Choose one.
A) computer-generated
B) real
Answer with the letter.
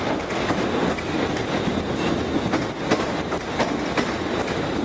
B